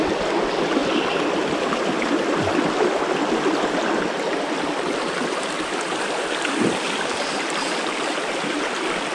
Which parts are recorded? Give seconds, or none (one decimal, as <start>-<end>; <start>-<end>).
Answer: 0.0-9.1